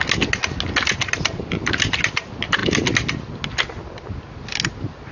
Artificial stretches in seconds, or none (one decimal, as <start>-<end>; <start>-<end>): none